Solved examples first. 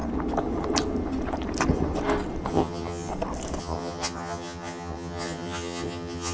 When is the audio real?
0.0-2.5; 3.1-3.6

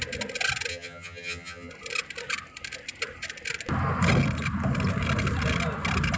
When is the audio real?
0.0-0.7; 1.7-6.2